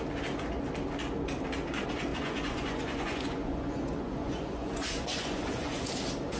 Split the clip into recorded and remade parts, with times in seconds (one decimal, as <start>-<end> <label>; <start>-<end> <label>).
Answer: 0.0-2.1 recorded; 2.1-5.9 remade; 5.9-6.4 recorded